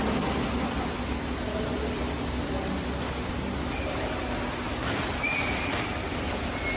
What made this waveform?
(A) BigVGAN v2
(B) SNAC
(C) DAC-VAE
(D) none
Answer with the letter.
D